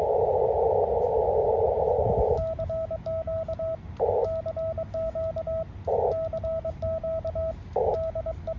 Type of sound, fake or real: real